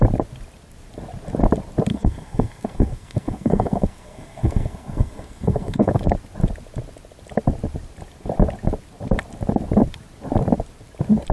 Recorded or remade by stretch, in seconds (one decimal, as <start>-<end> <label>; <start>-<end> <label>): 0.0-1.9 recorded; 1.9-6.0 remade; 6.0-11.3 recorded